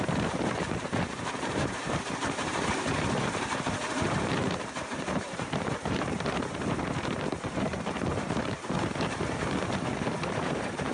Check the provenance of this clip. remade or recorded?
remade